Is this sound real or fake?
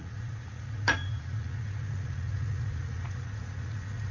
fake